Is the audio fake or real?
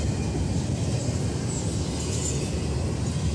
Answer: real